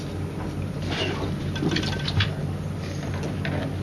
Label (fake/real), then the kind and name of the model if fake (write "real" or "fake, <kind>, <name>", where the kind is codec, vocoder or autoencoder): real